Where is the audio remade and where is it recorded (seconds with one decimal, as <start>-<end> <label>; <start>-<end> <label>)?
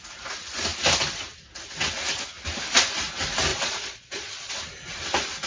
0.0-3.5 recorded; 3.5-4.5 remade; 4.5-5.5 recorded